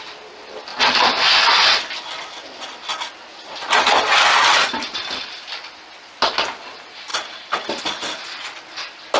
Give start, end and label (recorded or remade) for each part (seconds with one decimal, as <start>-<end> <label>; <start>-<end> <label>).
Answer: 0.0-9.2 recorded